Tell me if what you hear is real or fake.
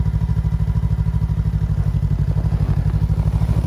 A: real